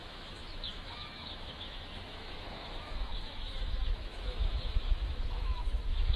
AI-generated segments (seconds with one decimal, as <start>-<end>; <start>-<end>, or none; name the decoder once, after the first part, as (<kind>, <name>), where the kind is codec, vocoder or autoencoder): 0.0-6.2 (autoencoder, DAC-VAE)